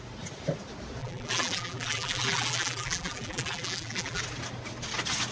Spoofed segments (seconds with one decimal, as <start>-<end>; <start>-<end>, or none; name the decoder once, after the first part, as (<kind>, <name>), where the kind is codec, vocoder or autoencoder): 1.0-4.2 (vocoder, BigVGAN v2)